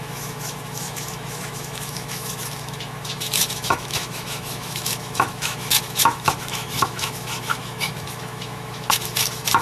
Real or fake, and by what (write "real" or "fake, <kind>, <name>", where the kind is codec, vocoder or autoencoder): fake, autoencoder, DAC-VAE